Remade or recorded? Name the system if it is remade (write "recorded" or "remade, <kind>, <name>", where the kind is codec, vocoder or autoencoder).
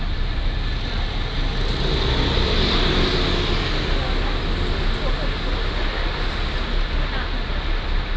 recorded